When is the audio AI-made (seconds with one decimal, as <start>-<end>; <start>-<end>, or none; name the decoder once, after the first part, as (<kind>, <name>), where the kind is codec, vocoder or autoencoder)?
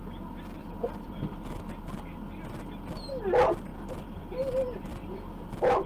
3.7-4.2 (vocoder, BigVGAN v2); 4.9-5.9